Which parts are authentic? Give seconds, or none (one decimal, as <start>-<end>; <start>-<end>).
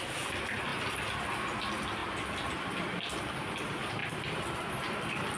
0.0-5.4